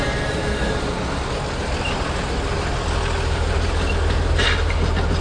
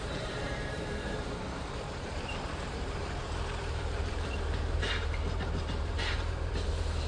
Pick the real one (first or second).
first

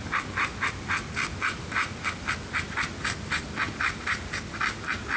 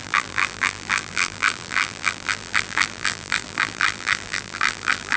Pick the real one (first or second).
first